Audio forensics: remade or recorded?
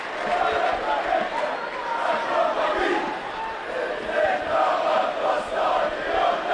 recorded